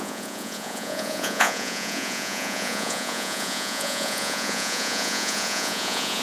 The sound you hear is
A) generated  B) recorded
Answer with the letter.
A